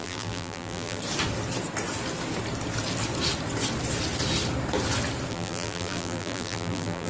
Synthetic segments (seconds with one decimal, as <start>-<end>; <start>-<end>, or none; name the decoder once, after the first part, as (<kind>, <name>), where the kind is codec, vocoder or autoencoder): 0.0-1.0 (vocoder, BigVGAN v2); 5.3-7.1